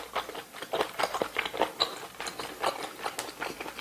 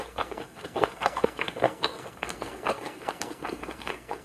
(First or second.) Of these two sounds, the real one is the first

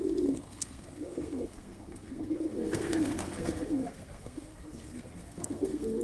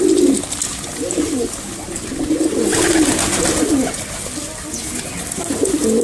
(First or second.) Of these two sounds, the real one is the second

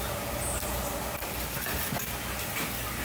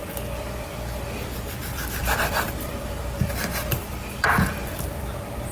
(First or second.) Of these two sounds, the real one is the first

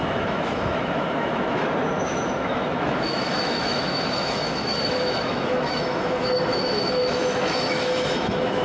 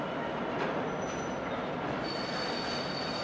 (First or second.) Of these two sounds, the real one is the second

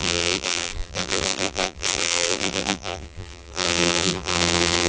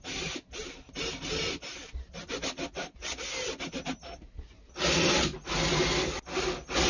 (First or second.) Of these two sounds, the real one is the second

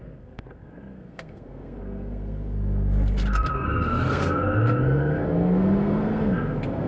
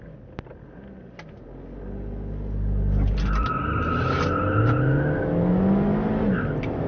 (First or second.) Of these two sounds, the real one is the second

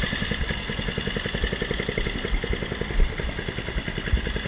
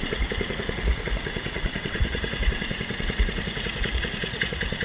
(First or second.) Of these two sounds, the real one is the first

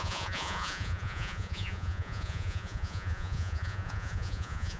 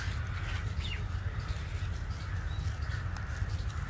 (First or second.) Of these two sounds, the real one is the second